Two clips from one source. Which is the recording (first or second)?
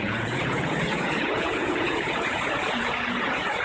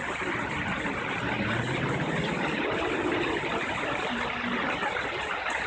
second